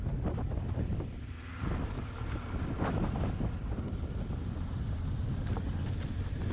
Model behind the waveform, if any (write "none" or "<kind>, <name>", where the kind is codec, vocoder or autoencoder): none